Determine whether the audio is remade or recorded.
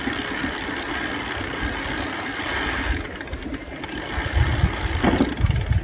recorded